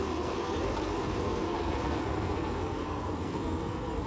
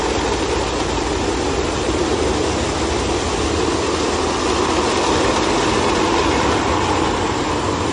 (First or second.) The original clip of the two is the second